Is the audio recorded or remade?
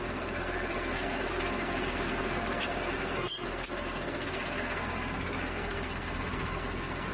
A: remade